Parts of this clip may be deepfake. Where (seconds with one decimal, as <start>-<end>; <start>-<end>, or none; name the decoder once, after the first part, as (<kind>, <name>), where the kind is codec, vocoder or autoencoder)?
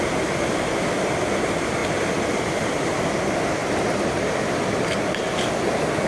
1.8-2.4 (vocoder, BigVGAN v2); 3.6-5.5